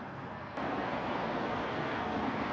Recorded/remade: remade